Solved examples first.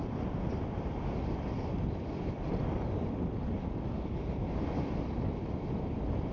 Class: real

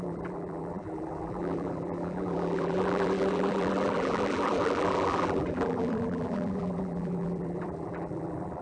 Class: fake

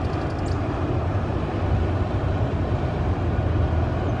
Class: real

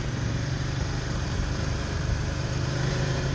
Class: fake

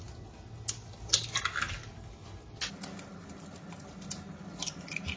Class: real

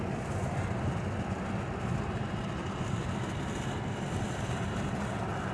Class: real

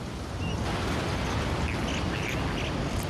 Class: real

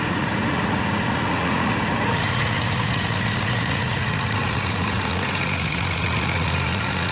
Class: fake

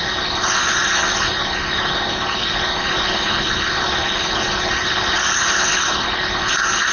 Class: real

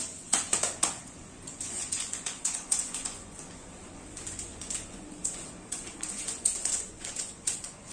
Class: fake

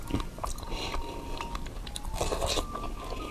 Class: real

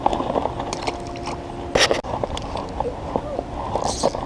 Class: real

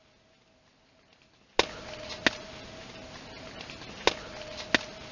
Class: real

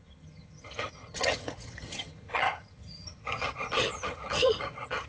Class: fake